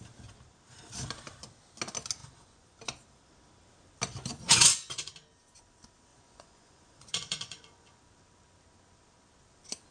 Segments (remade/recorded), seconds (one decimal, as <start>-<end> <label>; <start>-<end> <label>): 0.0-2.2 recorded; 2.2-2.8 remade; 2.8-4.3 recorded; 4.3-5.1 remade; 5.1-6.1 recorded; 6.1-8.0 remade; 8.0-9.9 recorded